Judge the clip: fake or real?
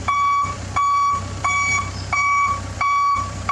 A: fake